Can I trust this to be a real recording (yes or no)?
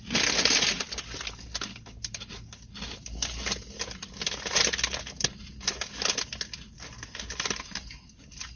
yes